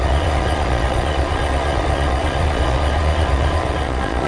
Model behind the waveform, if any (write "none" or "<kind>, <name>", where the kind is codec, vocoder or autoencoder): vocoder, Vocos